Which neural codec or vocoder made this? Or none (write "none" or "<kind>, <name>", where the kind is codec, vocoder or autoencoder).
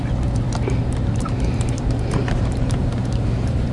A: vocoder, BigVGAN v2